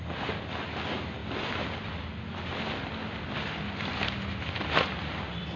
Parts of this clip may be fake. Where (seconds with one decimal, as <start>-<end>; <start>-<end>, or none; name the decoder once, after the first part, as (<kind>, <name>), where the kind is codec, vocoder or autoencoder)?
none